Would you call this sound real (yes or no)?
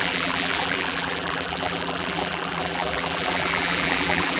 no